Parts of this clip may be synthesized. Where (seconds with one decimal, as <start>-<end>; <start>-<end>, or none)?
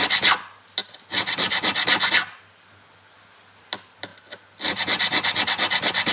none